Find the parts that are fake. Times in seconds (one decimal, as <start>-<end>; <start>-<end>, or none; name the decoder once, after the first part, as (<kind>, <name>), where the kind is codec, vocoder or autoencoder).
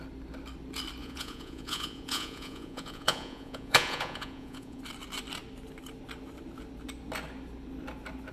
1.0-4.8 (vocoder, Vocos)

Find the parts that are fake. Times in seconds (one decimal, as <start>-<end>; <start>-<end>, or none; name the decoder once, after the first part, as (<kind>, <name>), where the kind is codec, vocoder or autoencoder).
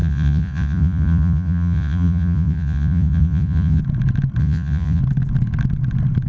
0.0-3.8 (vocoder, Vocos); 4.4-5.0